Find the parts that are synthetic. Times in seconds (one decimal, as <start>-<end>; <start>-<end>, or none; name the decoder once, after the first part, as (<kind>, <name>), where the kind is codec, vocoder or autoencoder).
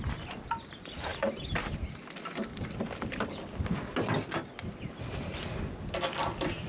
none